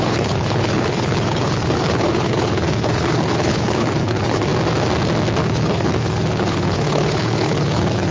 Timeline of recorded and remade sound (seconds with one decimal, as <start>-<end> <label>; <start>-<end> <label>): 0.0-4.5 remade; 4.5-5.4 recorded; 5.4-8.1 remade